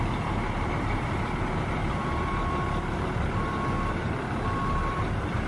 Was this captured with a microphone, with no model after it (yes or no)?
no